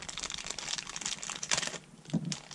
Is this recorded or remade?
recorded